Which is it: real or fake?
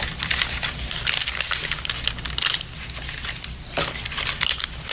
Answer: real